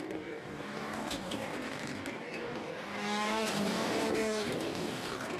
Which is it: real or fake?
fake